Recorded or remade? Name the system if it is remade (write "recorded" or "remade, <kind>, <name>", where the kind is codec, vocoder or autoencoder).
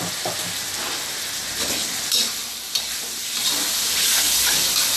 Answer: recorded